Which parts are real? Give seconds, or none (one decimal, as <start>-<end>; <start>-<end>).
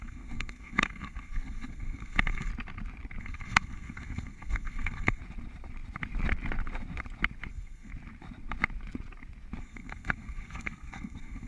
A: 2.5-3.2; 5.2-7.5; 7.9-9.6